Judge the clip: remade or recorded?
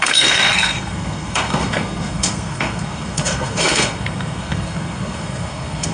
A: remade